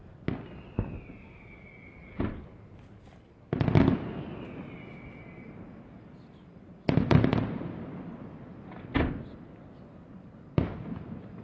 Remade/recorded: recorded